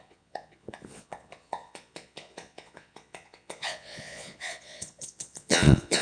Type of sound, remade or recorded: remade